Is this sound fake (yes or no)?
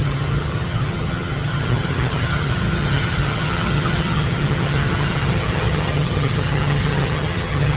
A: yes